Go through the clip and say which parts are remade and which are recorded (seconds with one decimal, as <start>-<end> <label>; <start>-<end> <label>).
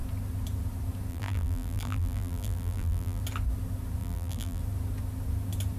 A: 0.0-1.1 recorded; 1.1-3.2 remade; 3.2-4.0 recorded; 4.0-4.6 remade; 4.6-5.8 recorded